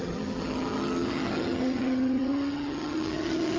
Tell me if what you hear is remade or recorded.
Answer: remade